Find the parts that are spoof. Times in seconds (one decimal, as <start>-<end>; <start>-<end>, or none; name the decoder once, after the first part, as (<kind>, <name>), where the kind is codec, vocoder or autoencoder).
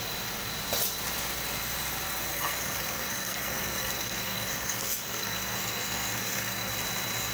2.3-6.7 (codec, SNAC)